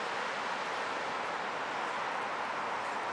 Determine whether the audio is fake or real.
real